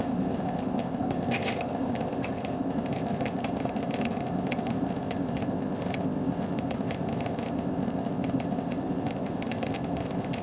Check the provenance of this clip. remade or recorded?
remade